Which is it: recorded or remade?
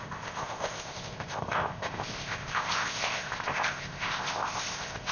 remade